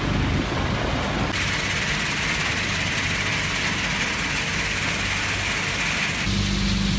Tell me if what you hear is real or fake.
real